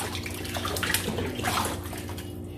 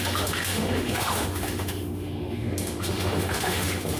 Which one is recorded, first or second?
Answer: first